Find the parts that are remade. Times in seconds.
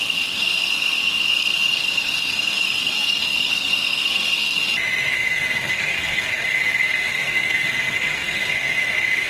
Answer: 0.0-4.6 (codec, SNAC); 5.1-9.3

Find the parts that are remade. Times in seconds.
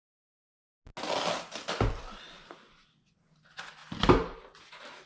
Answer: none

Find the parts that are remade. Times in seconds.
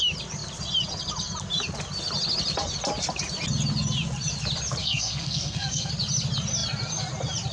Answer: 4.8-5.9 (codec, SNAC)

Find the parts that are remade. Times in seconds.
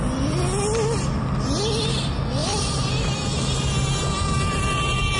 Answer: none